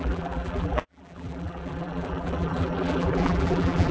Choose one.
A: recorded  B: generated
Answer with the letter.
B